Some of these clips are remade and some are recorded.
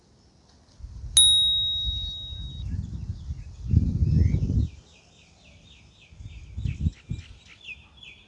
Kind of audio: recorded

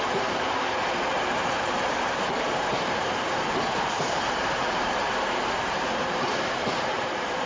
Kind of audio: remade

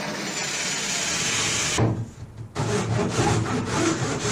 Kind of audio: recorded